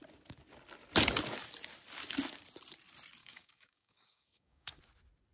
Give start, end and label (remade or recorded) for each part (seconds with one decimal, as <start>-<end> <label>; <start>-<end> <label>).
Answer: 0.0-3.2 recorded; 3.2-4.8 remade; 4.8-5.3 recorded

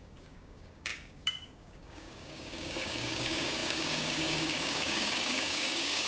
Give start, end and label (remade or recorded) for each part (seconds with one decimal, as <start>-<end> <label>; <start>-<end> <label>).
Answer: 0.0-6.1 remade

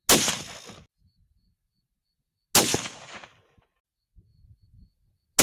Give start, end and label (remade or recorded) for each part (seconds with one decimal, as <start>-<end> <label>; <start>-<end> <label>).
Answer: 0.0-5.4 recorded

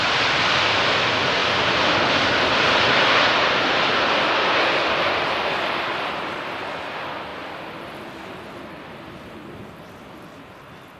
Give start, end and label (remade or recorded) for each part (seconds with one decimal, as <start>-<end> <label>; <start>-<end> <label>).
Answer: 0.0-11.0 recorded

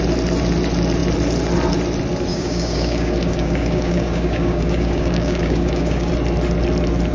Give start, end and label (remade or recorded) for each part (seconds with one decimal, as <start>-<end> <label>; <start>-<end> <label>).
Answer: 0.0-2.3 recorded; 2.3-6.1 remade; 6.1-7.1 recorded